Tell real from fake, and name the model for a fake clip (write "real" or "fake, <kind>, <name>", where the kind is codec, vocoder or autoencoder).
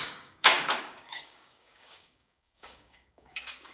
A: fake, codec, DAC